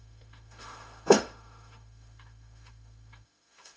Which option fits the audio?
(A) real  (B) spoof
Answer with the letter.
B